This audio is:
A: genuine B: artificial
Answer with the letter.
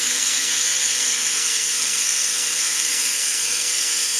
B